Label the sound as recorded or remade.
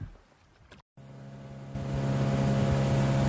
recorded